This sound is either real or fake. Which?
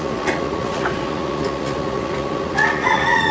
fake